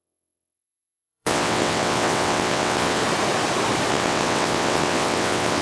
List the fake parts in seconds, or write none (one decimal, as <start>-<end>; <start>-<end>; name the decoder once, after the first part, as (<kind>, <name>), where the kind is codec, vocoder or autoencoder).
0.0-3.0 (vocoder, WaveNeXt); 3.9-5.6